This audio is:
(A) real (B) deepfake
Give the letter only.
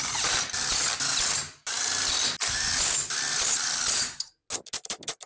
A